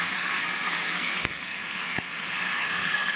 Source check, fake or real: fake